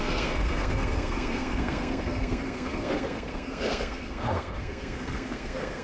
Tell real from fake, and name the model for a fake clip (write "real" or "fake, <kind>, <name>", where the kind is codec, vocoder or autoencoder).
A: fake, codec, SNAC